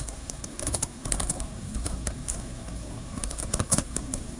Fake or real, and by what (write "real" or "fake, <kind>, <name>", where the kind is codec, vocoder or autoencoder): fake, codec, SNAC